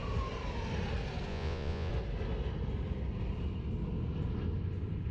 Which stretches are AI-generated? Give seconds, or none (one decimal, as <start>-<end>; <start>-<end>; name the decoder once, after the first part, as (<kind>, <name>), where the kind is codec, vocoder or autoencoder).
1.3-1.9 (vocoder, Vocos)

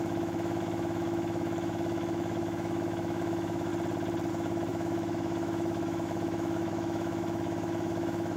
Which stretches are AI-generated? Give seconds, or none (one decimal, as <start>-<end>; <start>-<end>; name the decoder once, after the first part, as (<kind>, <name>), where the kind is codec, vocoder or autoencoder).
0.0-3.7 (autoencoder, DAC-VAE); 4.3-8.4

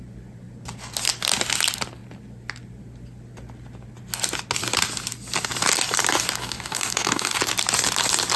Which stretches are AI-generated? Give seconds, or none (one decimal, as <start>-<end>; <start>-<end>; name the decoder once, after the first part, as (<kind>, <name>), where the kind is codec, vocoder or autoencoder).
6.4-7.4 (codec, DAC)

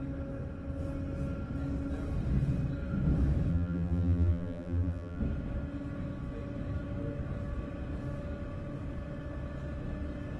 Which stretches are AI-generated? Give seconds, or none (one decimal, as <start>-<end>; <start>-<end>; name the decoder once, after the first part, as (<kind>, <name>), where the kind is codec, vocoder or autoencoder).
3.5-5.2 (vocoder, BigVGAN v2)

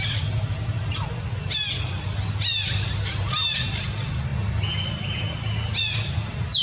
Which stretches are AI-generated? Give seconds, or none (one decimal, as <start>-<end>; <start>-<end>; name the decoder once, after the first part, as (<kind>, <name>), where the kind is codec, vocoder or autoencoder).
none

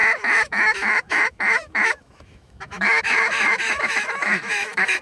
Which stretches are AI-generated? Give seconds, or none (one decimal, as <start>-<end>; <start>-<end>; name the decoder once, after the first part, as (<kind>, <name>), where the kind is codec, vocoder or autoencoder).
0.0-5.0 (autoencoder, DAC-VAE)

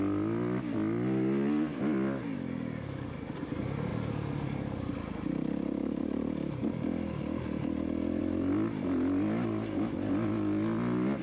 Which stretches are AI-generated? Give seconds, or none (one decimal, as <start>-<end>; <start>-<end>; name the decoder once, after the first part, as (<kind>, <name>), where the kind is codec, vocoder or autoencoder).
none